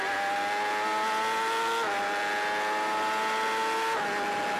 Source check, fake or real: real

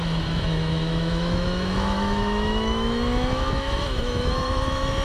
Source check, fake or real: fake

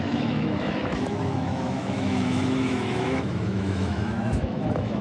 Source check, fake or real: fake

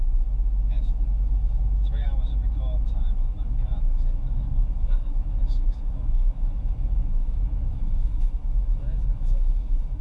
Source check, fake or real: fake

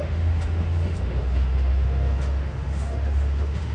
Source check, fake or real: fake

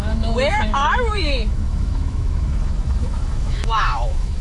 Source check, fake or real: fake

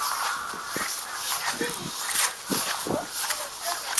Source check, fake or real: real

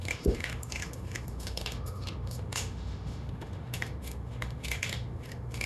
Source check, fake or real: fake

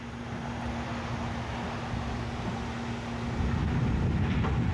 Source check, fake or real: real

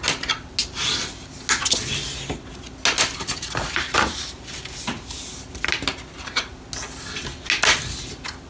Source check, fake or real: real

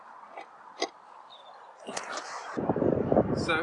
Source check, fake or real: real